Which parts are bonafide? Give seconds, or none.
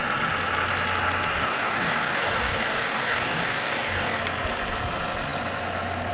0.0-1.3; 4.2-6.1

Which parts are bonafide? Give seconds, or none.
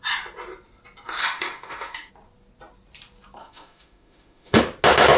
0.0-1.2; 2.1-3.4; 4.6-5.2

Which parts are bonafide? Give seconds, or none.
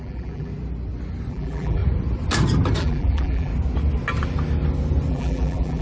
0.5-1.3; 1.8-2.8; 3.5-5.1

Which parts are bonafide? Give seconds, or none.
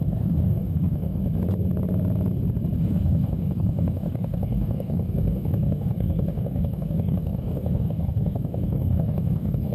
1.2-2.8